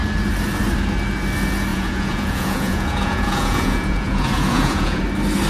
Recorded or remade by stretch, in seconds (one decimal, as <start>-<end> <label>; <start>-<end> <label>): 0.0-1.7 recorded; 1.7-5.0 remade; 5.0-5.5 recorded